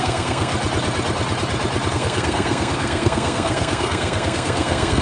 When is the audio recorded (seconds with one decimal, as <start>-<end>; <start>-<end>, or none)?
0.5-1.9